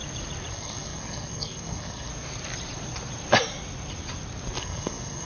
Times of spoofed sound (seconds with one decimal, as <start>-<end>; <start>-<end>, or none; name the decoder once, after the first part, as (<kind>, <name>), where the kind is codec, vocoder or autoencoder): 0.5-2.1 (codec, SNAC); 4.6-5.2